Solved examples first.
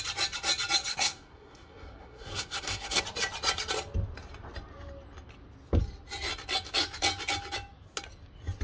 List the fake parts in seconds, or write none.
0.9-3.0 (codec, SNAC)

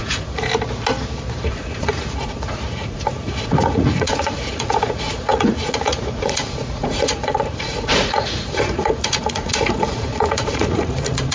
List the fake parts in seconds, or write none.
0.0-0.5 (vocoder, Vocos); 1.4-11.3